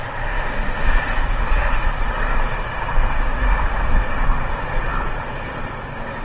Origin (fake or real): real